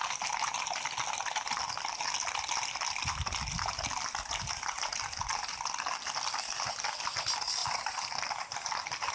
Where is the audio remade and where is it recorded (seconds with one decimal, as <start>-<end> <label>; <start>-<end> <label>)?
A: 0.0-9.1 recorded